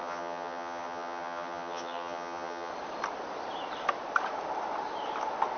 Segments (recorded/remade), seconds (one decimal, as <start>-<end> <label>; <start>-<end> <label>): 0.0-2.7 remade; 2.7-5.6 recorded